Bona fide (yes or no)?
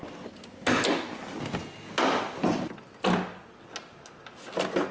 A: yes